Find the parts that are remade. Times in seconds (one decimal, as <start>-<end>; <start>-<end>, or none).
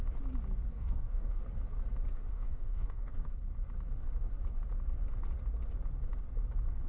0.7-1.4; 2.3-3.3